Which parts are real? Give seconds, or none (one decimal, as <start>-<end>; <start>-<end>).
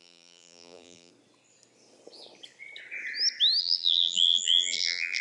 1.1-3.6